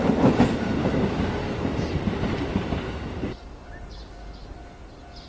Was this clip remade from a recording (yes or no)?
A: no